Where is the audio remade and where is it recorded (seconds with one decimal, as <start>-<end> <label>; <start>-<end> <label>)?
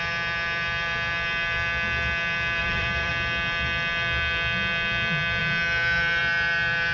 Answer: 0.0-2.6 recorded; 2.6-3.1 remade; 3.1-6.9 recorded